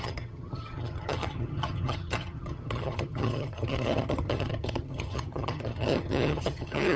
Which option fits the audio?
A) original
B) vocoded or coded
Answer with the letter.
B